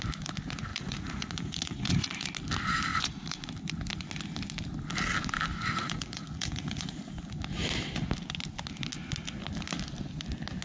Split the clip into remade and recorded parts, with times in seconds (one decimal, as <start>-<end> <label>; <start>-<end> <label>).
0.0-0.7 recorded; 0.7-2.3 remade; 2.3-2.9 recorded; 2.9-3.5 remade; 3.5-5.8 recorded; 5.8-7.0 remade; 7.0-10.6 recorded